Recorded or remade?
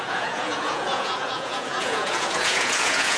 remade